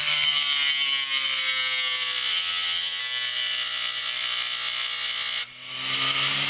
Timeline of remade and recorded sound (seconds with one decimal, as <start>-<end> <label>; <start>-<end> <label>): 0.0-2.3 recorded; 2.3-3.0 remade; 3.0-6.5 recorded